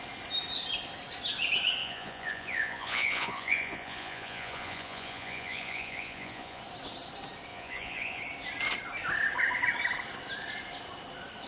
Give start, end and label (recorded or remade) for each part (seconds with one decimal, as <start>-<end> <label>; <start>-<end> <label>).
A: 0.0-1.8 recorded; 1.8-6.6 remade; 6.6-7.5 recorded; 7.5-8.2 remade; 8.2-11.5 recorded

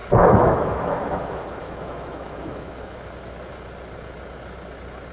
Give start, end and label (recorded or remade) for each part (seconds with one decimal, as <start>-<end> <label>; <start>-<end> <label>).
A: 0.0-3.1 remade; 3.1-5.1 recorded

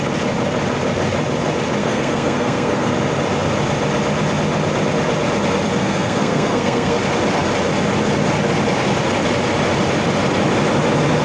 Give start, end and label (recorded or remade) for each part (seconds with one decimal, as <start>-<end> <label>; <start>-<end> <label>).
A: 0.0-1.8 recorded; 1.8-2.9 remade; 2.9-5.8 recorded; 5.8-7.0 remade; 7.0-11.2 recorded